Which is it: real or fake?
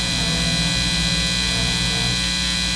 real